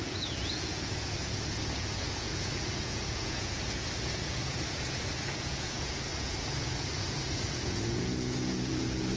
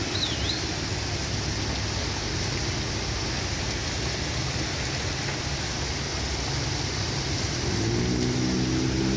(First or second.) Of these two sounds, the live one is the second